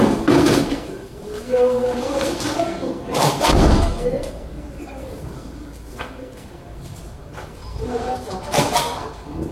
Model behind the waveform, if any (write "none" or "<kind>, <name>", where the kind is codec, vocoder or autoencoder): codec, SNAC